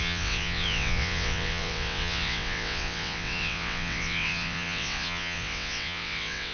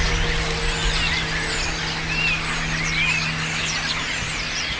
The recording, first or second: second